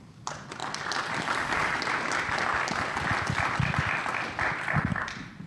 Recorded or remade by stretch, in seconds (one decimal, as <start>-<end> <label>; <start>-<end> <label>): 0.0-5.5 recorded